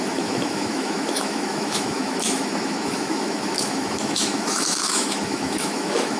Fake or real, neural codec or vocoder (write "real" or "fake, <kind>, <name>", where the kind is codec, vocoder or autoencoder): fake, autoencoder, DAC-VAE